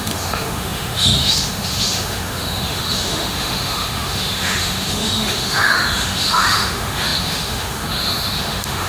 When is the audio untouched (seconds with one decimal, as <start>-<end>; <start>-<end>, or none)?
none